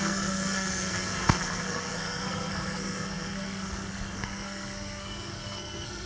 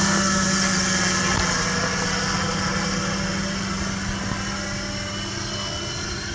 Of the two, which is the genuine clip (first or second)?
second